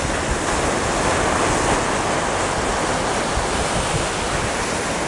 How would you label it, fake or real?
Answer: real